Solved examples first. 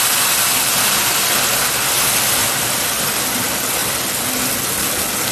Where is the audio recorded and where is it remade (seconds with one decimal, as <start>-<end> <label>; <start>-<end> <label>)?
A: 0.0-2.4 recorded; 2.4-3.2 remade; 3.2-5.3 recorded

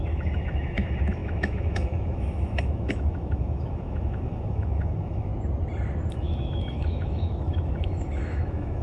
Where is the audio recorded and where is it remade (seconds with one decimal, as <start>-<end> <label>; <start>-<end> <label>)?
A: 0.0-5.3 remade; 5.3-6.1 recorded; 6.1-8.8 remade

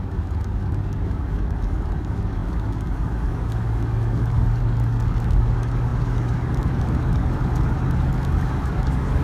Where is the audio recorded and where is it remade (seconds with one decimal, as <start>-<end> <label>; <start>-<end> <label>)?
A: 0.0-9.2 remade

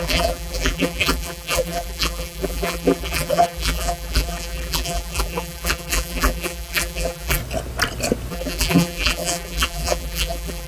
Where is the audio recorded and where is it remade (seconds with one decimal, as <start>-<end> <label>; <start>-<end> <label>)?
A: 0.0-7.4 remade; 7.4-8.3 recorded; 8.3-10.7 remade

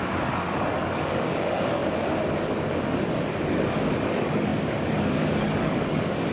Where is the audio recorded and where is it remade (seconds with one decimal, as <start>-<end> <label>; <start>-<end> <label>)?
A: 0.0-1.8 remade; 1.8-2.3 recorded; 2.3-6.3 remade